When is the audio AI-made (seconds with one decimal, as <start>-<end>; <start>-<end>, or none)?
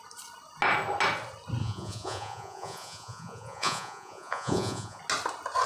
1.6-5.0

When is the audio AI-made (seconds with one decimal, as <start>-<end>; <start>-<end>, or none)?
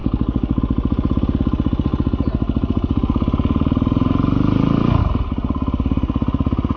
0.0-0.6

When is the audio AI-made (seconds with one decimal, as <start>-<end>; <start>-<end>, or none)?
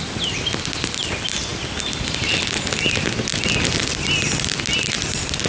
none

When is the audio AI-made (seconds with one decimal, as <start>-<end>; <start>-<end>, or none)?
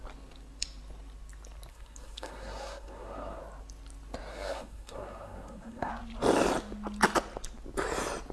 1.7-3.4; 4.3-5.9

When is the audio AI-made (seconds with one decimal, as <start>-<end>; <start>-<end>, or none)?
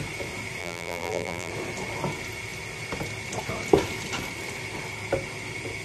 0.6-1.5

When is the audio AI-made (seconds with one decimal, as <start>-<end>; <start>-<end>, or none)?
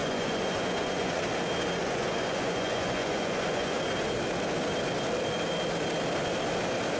0.0-1.2; 1.8-3.8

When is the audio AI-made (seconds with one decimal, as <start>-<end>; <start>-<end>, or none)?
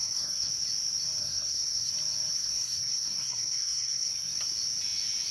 0.0-0.5; 1.2-1.9; 2.3-4.4